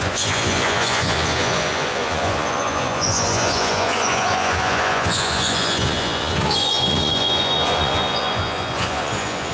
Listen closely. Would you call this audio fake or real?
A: fake